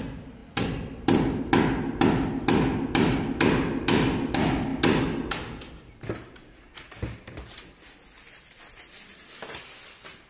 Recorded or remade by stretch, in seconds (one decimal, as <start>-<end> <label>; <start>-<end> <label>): 0.0-10.3 recorded